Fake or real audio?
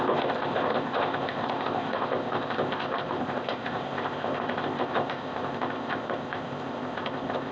fake